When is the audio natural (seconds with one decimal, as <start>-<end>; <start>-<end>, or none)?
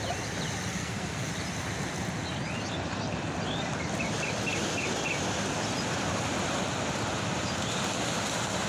0.0-0.7; 1.3-8.7